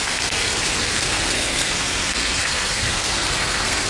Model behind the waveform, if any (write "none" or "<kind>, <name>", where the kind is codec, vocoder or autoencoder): codec, SNAC